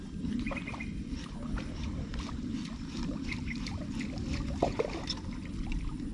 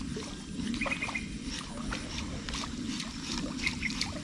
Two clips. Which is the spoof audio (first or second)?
first